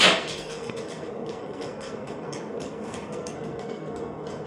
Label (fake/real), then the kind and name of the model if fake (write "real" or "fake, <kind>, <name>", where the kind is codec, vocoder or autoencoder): fake, codec, SNAC